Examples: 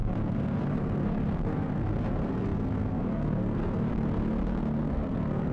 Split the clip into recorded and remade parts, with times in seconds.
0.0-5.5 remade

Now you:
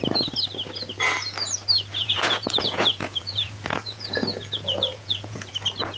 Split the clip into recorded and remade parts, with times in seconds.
0.0-2.0 recorded; 2.0-5.5 remade; 5.5-6.0 recorded

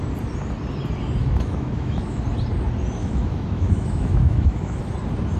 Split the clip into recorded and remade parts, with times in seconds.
0.0-1.2 recorded; 1.2-2.2 remade; 2.2-3.0 recorded; 3.0-4.8 remade; 4.8-5.4 recorded

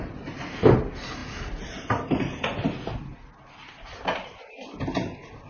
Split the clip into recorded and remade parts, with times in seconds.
0.0-5.5 recorded

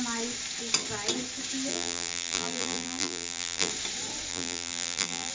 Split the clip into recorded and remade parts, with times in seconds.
0.0-1.7 recorded; 1.7-3.7 remade; 3.7-4.3 recorded; 4.3-5.3 remade

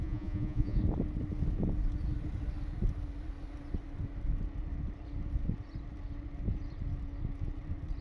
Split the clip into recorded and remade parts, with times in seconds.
0.0-0.8 remade; 0.8-8.0 recorded